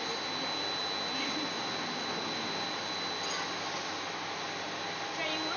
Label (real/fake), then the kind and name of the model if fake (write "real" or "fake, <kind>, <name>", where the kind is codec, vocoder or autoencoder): real